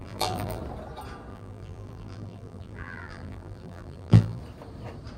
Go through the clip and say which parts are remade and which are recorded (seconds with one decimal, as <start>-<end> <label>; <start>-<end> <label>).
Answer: 0.0-0.6 remade; 0.6-1.3 recorded; 1.3-4.4 remade; 4.4-5.2 recorded